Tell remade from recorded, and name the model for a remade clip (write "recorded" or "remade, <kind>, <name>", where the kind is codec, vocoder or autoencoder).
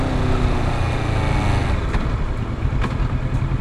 recorded